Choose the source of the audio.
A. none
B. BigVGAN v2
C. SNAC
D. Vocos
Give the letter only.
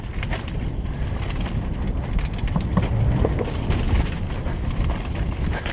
A